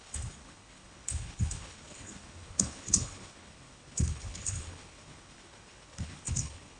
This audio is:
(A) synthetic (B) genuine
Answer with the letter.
A